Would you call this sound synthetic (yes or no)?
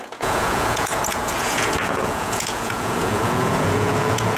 yes